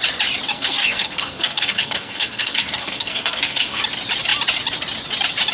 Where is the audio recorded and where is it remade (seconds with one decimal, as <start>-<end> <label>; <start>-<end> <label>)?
0.0-0.5 recorded; 0.5-3.8 remade; 3.8-5.5 recorded